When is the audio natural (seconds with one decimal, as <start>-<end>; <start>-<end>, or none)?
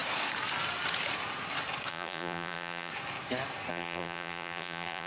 0.0-1.9; 2.9-3.7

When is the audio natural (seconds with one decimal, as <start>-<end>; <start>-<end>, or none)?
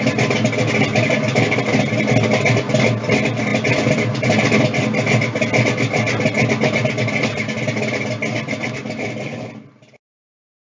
0.0-10.7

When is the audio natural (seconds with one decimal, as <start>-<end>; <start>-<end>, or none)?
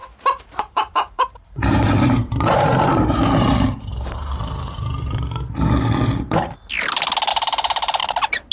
4.3-7.3; 8.0-8.5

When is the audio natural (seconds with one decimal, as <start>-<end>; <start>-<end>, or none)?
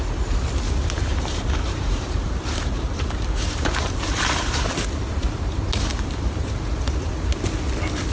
0.0-1.1; 4.5-5.9; 6.6-8.1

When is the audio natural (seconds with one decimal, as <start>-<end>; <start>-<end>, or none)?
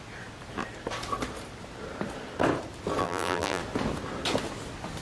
0.0-3.0; 3.6-5.0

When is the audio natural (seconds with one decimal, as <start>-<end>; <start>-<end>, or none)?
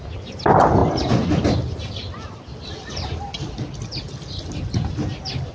0.0-5.5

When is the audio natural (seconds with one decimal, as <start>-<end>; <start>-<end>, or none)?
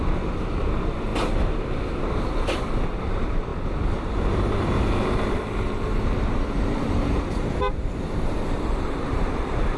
1.1-2.0